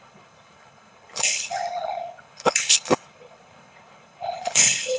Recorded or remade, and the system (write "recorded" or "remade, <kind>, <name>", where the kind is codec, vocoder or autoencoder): remade, codec, HILCodec